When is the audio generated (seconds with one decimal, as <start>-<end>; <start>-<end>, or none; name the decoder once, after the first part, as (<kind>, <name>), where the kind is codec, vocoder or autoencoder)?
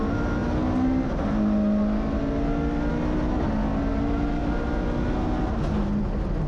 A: none